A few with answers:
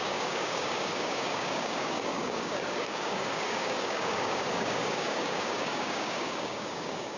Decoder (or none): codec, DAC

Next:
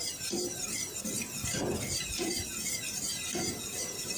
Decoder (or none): vocoder, BigVGAN v2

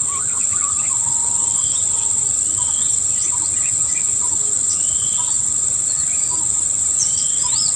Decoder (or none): vocoder, BigVGAN v2